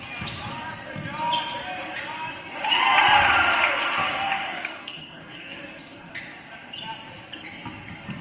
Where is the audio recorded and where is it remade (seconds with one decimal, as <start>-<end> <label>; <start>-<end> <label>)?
0.0-3.8 recorded; 3.8-6.0 remade; 6.0-8.2 recorded